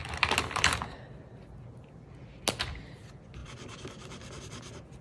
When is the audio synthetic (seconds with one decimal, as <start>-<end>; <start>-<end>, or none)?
none